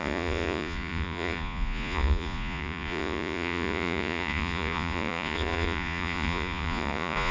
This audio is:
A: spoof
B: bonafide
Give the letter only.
A